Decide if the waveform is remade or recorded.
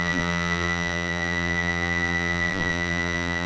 remade